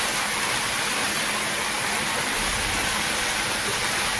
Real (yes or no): yes